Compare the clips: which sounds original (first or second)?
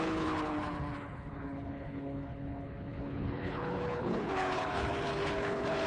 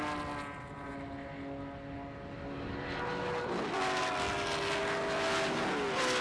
second